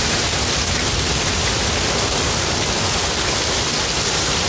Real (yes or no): yes